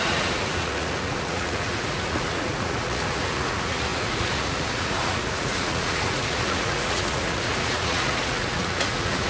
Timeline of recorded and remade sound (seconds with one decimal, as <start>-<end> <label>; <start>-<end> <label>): 0.0-9.3 remade